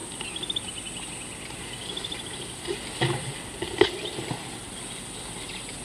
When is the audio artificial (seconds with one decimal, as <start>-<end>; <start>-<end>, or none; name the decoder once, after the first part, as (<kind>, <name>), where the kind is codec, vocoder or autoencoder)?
1.8-5.3 (vocoder, BigVGAN v2)